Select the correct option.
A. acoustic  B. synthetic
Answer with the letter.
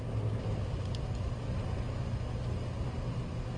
A